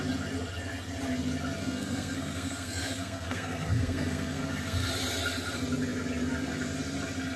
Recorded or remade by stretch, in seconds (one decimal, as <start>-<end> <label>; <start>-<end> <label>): 0.0-1.6 recorded; 1.6-4.9 remade; 4.9-7.4 recorded